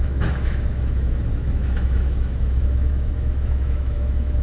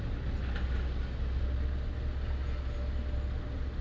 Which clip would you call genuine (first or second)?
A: second